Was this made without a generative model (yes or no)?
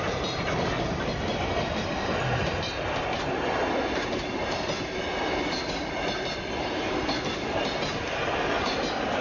yes